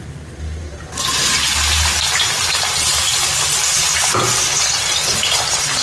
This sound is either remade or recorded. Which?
recorded